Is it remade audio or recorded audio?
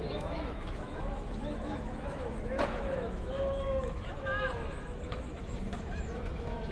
remade